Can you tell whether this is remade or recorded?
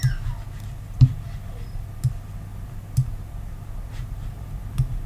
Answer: recorded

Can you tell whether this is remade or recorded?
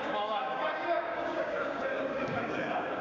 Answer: remade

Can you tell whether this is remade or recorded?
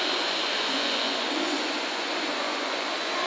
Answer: remade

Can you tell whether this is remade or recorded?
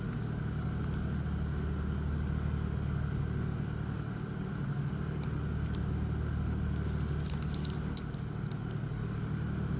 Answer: recorded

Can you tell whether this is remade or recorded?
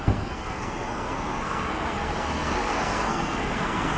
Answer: remade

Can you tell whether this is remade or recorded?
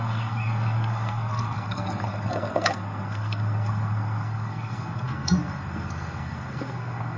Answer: remade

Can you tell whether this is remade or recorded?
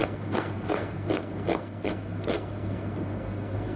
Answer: remade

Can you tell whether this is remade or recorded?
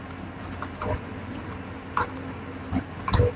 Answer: recorded